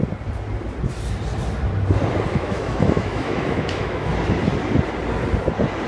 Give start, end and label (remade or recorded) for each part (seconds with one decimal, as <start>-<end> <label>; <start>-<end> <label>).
0.0-2.3 recorded; 2.3-4.1 remade; 4.1-5.9 recorded